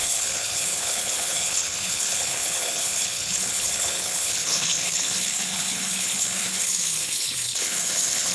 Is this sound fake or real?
fake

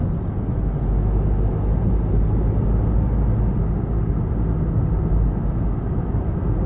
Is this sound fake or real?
real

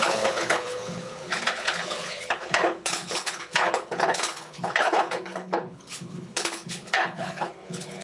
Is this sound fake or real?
fake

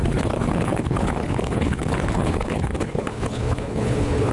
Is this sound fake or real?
fake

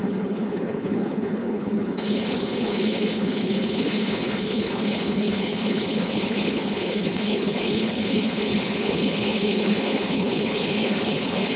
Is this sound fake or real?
fake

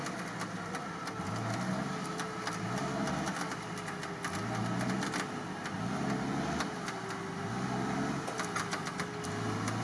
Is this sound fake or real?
real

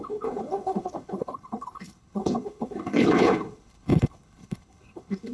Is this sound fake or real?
fake